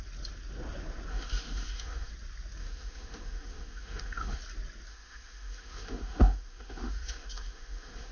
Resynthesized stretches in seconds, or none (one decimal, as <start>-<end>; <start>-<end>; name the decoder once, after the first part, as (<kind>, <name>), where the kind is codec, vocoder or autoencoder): 1.1-2.1 (autoencoder, DAC-VAE); 2.6-4.4; 4.9-8.1